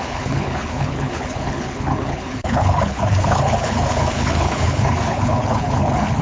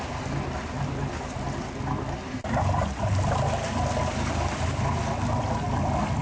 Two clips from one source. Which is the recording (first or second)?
second